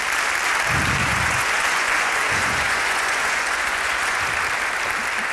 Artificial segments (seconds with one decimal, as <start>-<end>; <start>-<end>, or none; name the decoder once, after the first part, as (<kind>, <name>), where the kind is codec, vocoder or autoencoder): 1.0-4.2 (vocoder, Vocos)